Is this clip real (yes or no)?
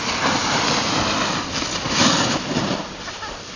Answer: yes